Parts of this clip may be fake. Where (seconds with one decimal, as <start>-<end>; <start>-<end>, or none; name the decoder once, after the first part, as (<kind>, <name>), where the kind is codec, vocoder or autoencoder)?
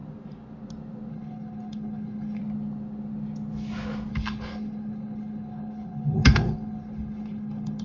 1.1-2.4 (codec, HILCodec); 4.1-7.8